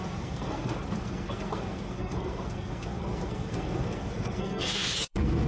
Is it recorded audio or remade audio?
remade